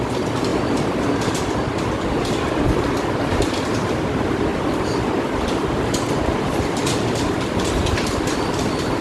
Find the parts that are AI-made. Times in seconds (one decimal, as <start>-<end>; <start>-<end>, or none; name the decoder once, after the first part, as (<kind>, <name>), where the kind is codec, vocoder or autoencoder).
none